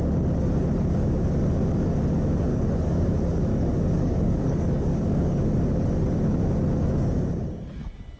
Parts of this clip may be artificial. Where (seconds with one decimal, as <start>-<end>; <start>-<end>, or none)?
2.5-3.1; 3.5-5.5